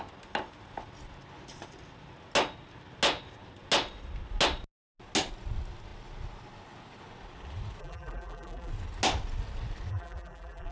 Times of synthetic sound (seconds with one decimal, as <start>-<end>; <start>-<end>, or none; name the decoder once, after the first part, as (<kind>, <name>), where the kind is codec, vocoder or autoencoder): 7.8-8.7 (vocoder, BigVGAN v2); 9.9-10.7